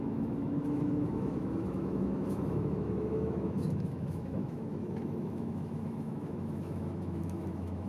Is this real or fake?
fake